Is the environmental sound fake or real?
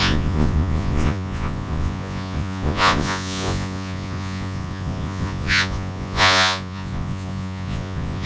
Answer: fake